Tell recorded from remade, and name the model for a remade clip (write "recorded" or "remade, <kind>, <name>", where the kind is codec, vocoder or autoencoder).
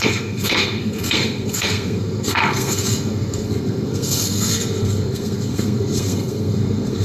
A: remade, codec, SNAC